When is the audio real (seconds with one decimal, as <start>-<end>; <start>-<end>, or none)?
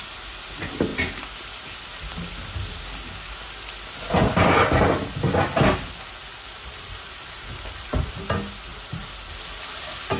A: 0.0-6.3; 8.1-10.2